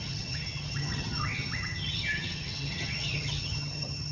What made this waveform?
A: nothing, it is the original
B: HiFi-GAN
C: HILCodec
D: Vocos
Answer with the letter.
B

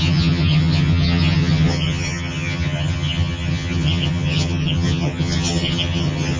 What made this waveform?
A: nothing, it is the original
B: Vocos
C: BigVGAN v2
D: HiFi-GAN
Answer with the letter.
D